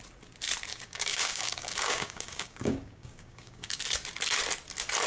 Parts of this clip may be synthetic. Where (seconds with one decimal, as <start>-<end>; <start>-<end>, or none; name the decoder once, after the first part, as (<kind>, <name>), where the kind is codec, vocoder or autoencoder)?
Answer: 0.7-3.8 (codec, DAC)